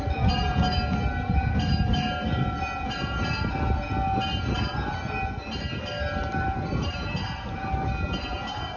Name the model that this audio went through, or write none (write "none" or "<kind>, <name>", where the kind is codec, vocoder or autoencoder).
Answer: none